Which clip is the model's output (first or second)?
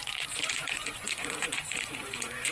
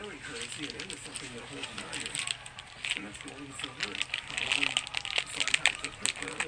first